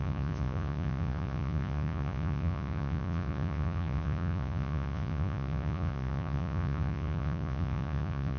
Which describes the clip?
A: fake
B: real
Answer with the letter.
A